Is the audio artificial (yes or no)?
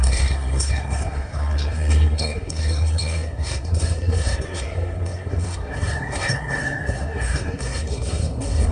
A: yes